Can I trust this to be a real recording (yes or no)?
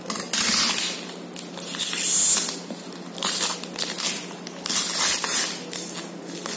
yes